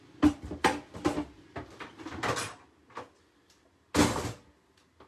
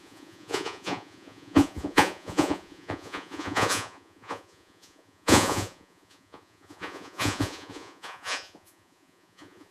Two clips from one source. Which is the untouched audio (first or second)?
first